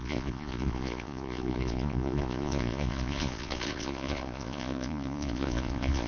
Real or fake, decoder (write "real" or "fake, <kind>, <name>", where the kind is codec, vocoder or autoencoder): fake, vocoder, Vocos